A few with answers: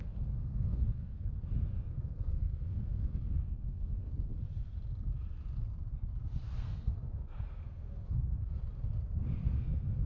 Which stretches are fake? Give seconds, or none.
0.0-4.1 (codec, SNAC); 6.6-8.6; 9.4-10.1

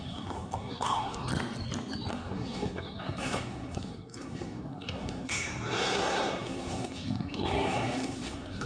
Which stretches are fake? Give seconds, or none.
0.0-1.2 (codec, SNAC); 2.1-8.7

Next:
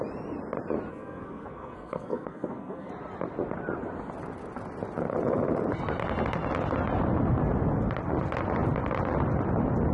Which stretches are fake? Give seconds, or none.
0.9-2.9 (codec, SNAC)